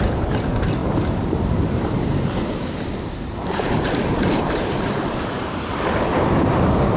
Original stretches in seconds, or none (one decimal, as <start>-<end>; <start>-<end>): 0.0-0.8; 5.0-7.0